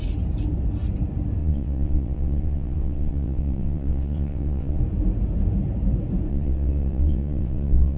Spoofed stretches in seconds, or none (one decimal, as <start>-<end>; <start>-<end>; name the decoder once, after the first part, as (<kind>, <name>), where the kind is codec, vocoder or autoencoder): 1.4-4.8 (vocoder, WaveNeXt); 6.3-8.0